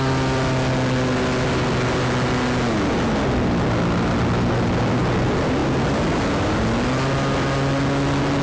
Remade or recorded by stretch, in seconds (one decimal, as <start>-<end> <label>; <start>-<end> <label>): 0.0-8.4 recorded